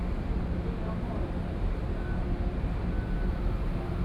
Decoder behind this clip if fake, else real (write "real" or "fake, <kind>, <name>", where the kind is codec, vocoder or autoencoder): real